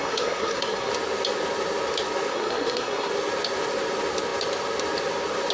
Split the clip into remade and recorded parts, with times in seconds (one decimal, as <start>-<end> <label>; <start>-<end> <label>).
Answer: 0.0-0.9 remade; 0.9-2.3 recorded; 2.3-3.1 remade; 3.1-5.5 recorded